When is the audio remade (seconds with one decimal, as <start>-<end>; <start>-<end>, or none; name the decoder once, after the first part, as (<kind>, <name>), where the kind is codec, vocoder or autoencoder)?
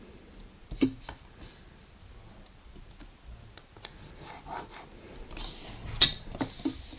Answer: none